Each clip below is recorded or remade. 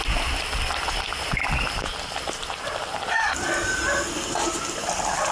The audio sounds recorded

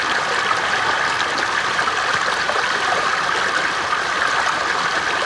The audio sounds remade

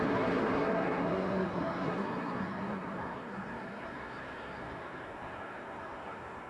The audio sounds remade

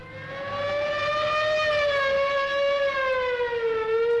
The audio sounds recorded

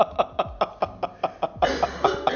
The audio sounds recorded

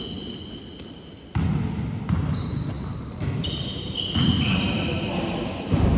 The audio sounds recorded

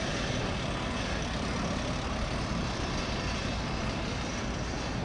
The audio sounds recorded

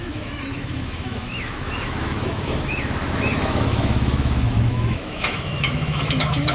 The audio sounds remade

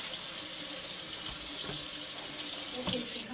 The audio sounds recorded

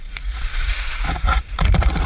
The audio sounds remade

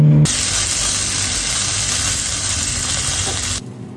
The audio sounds recorded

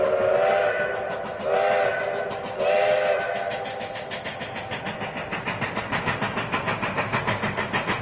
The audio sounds recorded